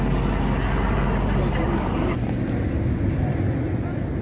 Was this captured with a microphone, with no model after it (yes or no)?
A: yes